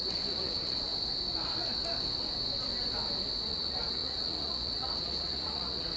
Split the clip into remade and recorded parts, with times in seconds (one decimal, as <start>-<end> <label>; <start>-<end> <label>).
0.0-0.9 remade; 0.9-3.4 recorded; 3.4-6.0 remade